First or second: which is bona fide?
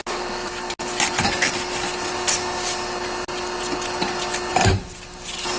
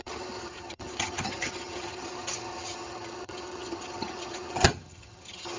first